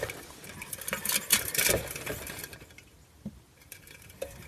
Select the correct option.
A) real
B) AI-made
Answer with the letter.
B